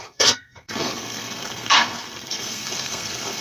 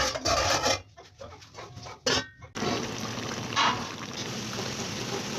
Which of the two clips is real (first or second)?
second